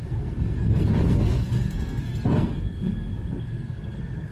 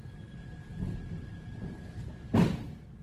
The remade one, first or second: first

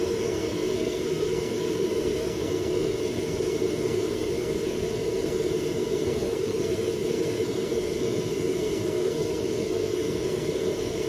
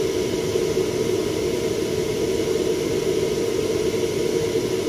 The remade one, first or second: first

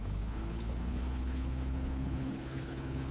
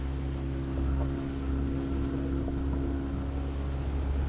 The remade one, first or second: first